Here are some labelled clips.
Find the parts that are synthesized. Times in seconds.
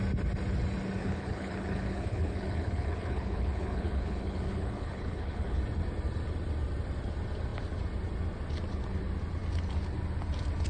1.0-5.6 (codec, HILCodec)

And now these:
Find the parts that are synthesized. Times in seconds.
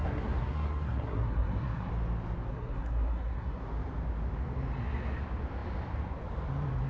0.0-1.9 (codec, SNAC); 2.5-3.6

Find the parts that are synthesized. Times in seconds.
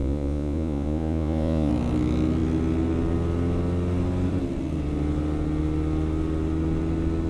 0.0-1.7 (vocoder, Vocos)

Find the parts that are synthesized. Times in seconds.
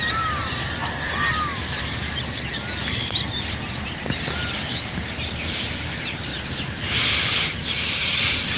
0.0-0.8 (vocoder, BigVGAN v2); 4.3-6.3; 6.8-8.6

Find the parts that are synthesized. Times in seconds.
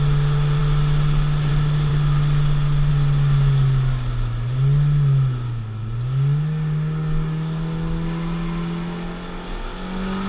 none